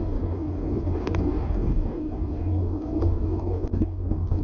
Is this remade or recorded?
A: remade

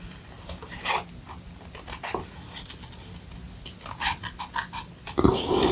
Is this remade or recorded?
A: recorded